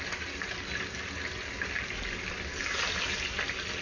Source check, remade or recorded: recorded